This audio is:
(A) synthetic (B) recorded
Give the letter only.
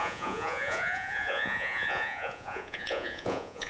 A